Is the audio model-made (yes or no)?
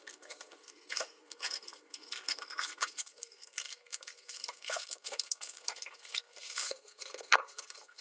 yes